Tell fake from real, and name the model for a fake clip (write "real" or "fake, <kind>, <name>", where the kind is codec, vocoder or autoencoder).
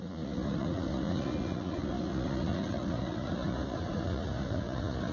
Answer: fake, vocoder, Vocos